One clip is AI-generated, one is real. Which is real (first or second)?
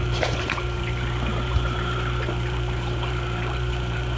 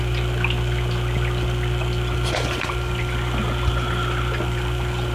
second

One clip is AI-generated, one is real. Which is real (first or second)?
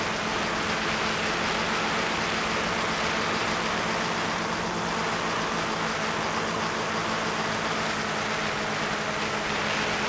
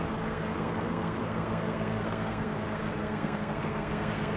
first